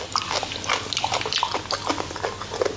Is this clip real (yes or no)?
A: yes